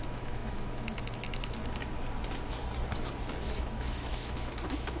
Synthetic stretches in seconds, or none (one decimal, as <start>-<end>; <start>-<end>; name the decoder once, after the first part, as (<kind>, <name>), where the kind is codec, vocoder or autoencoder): 0.0-1.6 (autoencoder, DAC-VAE); 3.6-5.0